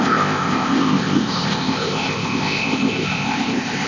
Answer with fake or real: fake